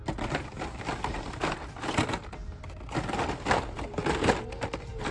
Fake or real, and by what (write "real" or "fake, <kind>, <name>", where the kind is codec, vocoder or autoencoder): real